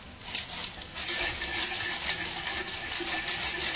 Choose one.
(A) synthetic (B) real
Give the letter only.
B